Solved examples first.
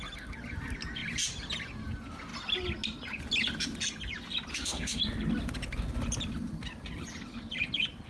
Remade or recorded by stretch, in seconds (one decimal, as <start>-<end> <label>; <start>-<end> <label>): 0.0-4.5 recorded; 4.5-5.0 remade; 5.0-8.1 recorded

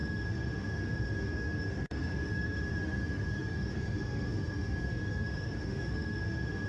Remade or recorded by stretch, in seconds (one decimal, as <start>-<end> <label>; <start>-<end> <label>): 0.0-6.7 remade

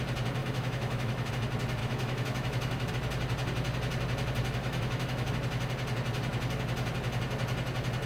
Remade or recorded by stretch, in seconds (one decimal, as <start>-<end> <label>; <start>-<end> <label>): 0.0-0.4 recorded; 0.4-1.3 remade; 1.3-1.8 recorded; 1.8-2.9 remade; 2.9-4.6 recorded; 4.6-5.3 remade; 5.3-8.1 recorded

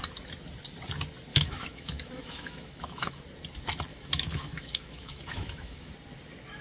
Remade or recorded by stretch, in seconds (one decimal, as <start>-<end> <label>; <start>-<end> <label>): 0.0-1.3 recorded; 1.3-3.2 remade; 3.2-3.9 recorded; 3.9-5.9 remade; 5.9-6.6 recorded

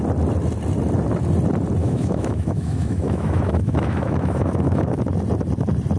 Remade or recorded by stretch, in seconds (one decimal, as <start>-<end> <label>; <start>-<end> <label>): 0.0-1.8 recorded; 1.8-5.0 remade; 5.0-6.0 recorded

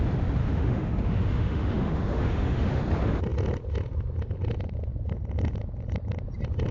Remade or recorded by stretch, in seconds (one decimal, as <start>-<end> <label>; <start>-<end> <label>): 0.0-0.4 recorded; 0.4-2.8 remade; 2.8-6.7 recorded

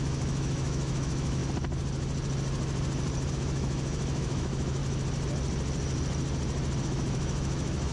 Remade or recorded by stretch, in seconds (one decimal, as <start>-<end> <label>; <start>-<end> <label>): 0.0-1.4 remade; 1.4-3.3 recorded; 3.3-4.8 remade; 4.8-6.8 recorded; 6.8-7.9 remade

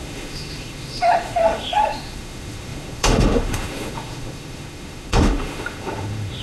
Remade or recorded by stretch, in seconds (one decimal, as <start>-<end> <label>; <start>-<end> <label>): 0.0-6.4 remade